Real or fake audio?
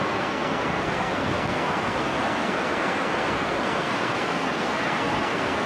fake